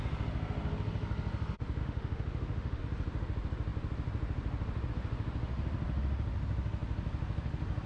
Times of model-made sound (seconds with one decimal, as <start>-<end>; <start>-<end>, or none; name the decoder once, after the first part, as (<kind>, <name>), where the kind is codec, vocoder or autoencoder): 1.8-2.8 (autoencoder, DAC-VAE)